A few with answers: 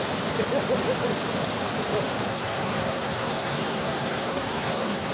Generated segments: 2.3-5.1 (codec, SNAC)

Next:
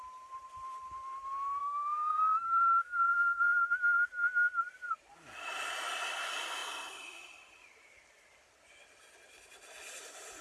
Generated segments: 1.6-3.4 (codec, SNAC)

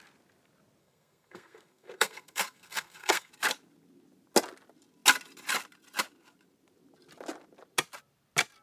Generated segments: 0.8-3.3 (codec, SNAC)

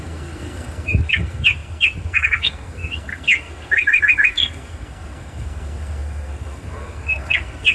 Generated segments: 0.0-7.7 (codec, SNAC)

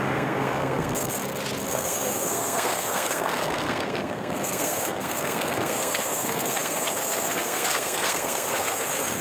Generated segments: 0.0-1.1 (codec, SNAC); 1.7-9.2

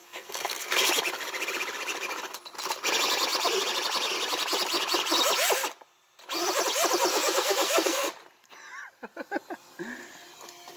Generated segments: 0.0-0.9 (codec, SNAC); 7.1-8.1

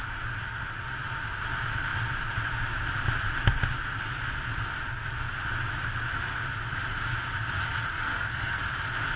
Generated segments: 7.9-8.6 (codec, SNAC)